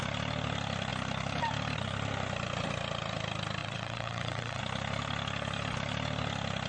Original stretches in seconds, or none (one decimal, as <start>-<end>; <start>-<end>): 0.0-3.6; 4.6-6.7